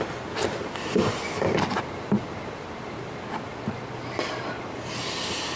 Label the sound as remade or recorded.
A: recorded